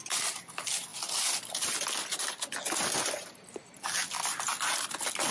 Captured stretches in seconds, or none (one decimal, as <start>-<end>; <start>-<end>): 0.0-5.3